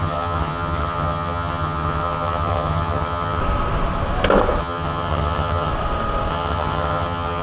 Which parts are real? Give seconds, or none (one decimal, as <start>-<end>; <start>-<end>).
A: 3.4-4.6; 5.7-6.3